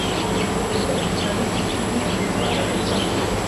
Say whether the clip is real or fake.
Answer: real